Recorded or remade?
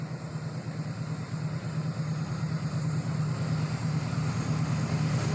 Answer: recorded